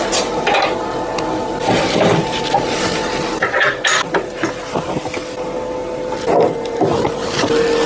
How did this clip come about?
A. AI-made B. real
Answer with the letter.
B